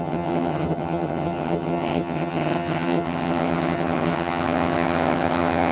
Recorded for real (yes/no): no